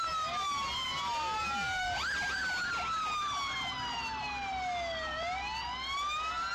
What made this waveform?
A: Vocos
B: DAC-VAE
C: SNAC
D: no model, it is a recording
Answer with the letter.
D